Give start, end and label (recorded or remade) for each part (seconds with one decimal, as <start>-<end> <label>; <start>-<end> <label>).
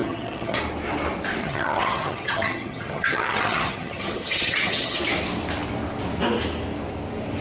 0.0-0.6 remade; 0.6-1.4 recorded; 1.4-5.0 remade; 5.0-7.4 recorded